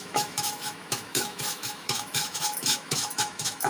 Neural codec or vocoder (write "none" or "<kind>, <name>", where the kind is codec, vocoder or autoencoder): autoencoder, DAC-VAE